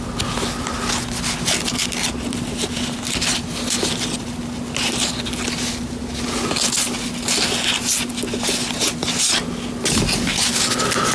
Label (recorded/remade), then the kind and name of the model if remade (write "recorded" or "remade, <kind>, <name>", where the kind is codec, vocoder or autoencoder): recorded